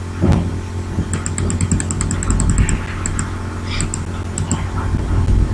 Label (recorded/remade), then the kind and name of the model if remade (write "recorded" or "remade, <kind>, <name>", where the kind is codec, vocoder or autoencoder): recorded